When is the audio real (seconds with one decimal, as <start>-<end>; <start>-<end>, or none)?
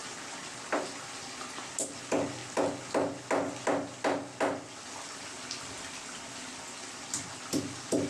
0.0-8.1